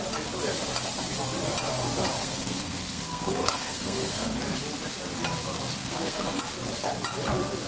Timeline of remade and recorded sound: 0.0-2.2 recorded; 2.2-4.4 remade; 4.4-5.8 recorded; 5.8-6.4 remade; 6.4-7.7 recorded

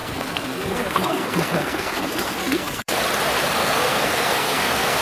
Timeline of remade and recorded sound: 0.0-3.0 remade; 3.0-3.6 recorded; 3.6-5.0 remade

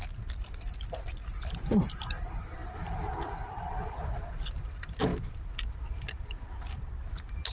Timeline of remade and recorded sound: 0.0-7.5 recorded